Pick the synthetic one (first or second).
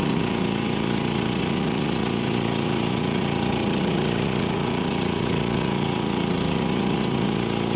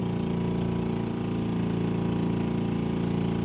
first